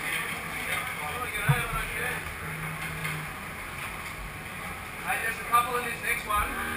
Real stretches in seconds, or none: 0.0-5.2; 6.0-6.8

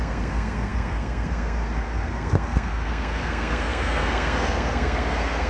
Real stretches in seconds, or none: none

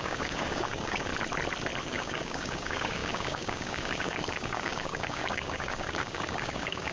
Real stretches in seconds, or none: 1.1-1.8

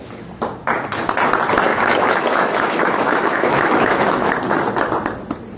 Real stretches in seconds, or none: 0.0-1.7; 4.3-5.6

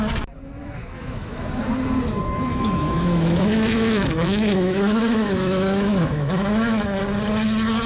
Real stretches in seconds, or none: 0.0-0.6; 1.6-2.5; 7.0-7.9